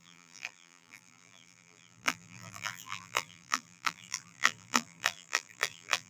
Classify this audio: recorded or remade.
remade